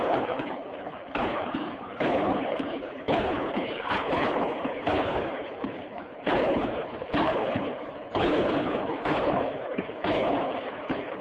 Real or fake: fake